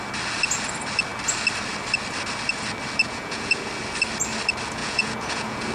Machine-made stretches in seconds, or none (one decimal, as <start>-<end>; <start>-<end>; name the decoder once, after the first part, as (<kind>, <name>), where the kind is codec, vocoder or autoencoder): 3.0-3.7 (vocoder, Vocos); 4.8-5.7